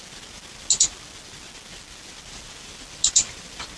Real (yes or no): yes